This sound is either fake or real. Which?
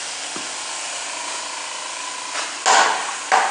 real